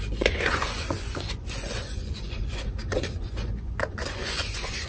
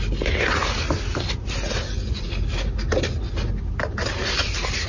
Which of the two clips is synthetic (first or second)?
first